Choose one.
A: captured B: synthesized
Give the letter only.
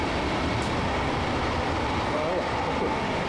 A